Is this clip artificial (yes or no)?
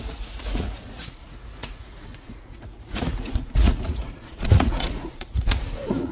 yes